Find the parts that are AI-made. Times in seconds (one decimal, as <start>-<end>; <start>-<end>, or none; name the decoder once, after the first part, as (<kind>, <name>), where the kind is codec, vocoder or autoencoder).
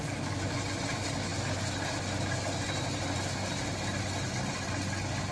none